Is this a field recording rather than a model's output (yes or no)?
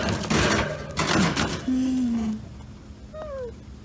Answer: yes